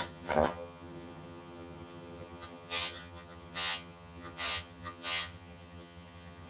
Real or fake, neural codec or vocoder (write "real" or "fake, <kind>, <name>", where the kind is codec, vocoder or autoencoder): fake, vocoder, HiFi-GAN